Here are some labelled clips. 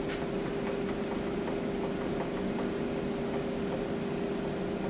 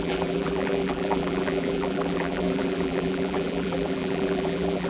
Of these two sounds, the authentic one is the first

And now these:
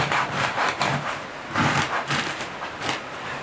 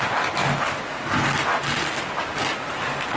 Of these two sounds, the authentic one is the second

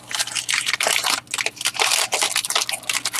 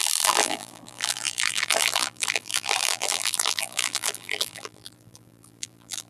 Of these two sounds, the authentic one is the first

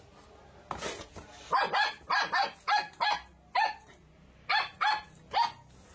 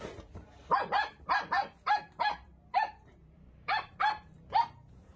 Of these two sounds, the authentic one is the first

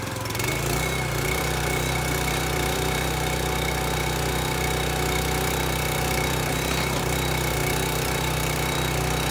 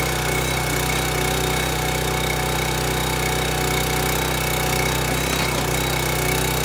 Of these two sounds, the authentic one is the second